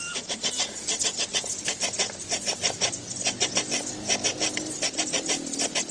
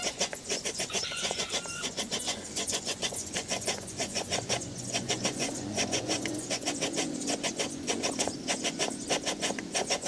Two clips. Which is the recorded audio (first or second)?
first